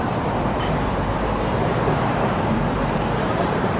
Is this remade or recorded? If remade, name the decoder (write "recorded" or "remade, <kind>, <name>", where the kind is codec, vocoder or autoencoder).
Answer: remade, vocoder, BigVGAN v2